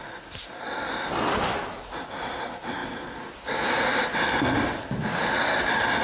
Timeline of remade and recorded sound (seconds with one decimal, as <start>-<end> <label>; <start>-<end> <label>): 0.0-6.0 recorded